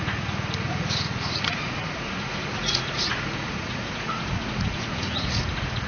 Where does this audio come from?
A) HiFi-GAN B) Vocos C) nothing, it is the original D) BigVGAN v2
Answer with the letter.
B